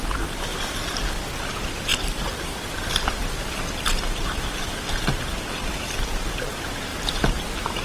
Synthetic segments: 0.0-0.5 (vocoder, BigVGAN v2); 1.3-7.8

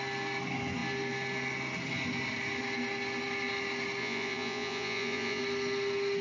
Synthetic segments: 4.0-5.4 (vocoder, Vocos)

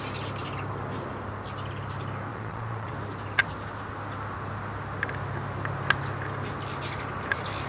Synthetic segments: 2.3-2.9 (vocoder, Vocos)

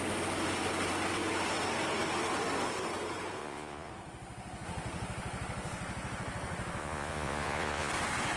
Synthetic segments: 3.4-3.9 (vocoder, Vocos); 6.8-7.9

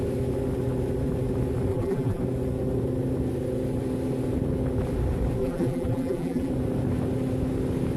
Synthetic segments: 1.7-2.2 (vocoder, BigVGAN v2); 5.4-6.5

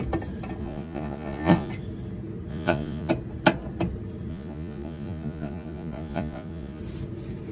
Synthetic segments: 0.6-1.7 (vocoder, Vocos); 2.5-3.1; 4.3-6.8